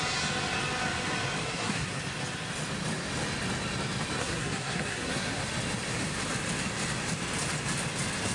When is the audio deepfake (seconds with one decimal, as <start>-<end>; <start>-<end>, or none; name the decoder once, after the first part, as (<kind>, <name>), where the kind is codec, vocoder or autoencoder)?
1.4-2.0 (codec, SNAC); 4.2-5.4